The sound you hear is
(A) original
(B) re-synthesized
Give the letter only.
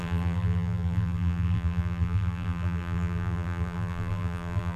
B